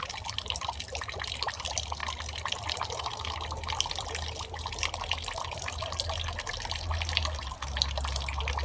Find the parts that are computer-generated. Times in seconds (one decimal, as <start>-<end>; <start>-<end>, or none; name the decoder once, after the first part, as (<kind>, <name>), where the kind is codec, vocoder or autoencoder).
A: none